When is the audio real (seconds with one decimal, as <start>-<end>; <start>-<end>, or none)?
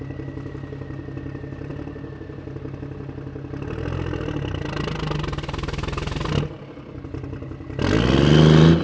0.0-8.8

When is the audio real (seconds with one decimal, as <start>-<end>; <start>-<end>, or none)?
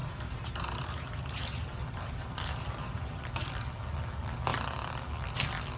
3.5-5.8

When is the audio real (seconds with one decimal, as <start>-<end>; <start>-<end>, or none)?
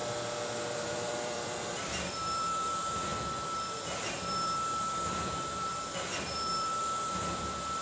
0.0-0.9; 3.1-4.1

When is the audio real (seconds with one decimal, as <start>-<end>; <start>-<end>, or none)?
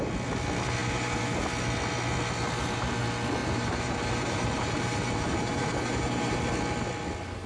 0.0-0.8; 1.4-3.4; 6.4-7.5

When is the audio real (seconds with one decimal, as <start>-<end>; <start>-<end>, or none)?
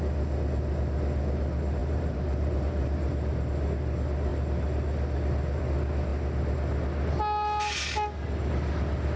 0.0-1.8; 3.3-9.2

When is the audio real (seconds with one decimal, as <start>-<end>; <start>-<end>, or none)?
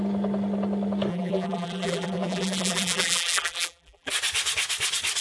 0.0-1.1; 4.1-5.2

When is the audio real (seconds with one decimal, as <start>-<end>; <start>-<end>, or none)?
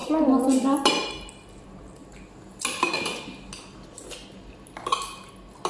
0.0-5.7